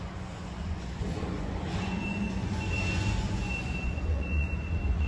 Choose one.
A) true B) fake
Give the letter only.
B